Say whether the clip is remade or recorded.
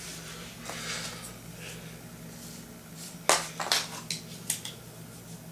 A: recorded